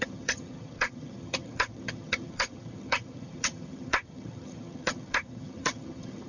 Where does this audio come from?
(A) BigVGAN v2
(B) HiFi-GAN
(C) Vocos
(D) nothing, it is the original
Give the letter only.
B